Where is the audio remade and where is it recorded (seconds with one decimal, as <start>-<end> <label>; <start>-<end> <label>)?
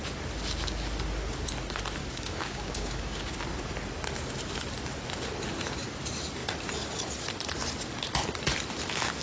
0.0-2.0 recorded; 2.0-3.3 remade; 3.3-9.2 recorded